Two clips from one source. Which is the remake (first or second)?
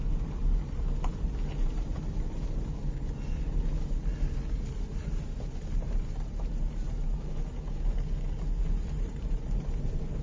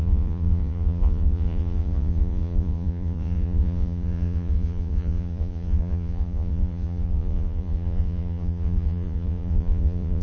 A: second